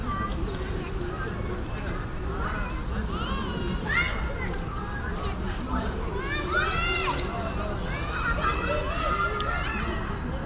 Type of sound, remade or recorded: recorded